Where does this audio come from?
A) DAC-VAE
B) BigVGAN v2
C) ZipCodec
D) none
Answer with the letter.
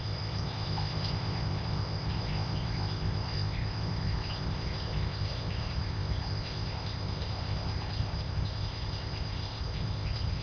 C